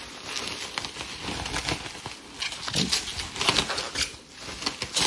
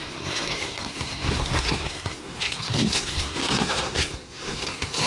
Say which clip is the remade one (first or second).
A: second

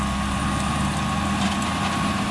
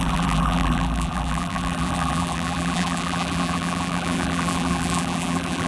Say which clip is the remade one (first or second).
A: second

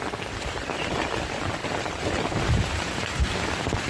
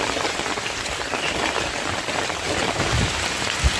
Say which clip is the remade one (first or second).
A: first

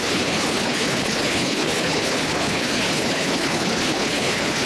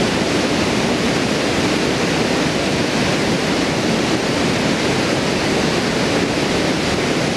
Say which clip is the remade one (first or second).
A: first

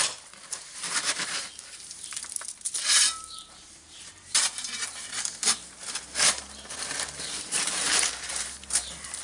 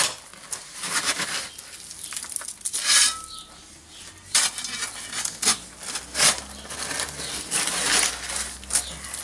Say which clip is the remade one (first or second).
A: first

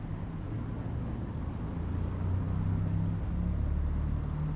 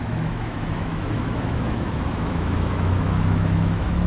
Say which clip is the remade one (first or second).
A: second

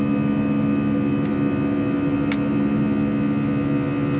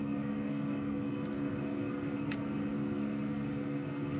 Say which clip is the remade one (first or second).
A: second